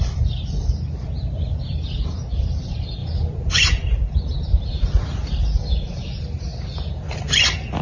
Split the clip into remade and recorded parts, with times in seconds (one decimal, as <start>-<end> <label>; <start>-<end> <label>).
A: 0.0-7.8 recorded